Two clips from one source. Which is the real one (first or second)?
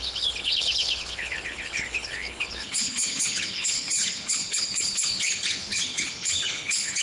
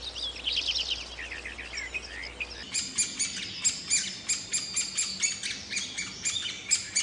second